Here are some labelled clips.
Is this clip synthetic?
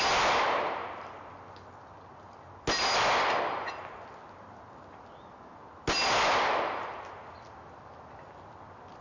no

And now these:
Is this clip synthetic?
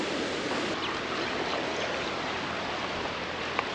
no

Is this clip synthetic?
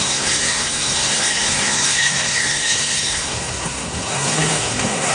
yes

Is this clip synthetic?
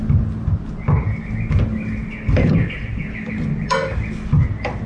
no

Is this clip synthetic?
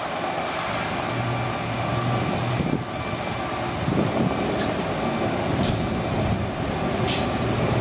no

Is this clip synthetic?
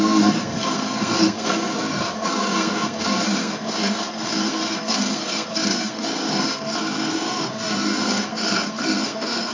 yes